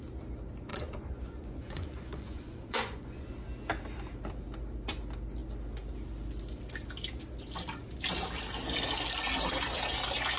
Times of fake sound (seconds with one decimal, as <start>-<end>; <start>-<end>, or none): 0.7-3.3